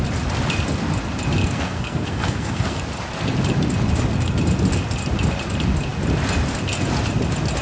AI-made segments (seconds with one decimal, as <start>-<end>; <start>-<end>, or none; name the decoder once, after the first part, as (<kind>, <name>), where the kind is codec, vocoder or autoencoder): 1.4-2.8 (codec, SNAC)